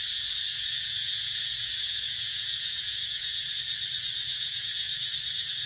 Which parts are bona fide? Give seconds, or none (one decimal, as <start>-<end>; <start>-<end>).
0.0-0.5; 3.6-4.3; 5.1-5.7